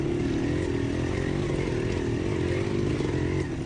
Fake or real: real